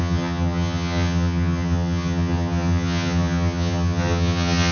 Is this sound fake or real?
fake